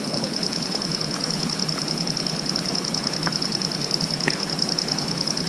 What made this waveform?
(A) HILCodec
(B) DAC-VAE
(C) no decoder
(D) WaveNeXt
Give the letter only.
A